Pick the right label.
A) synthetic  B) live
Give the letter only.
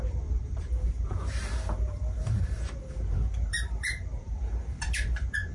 A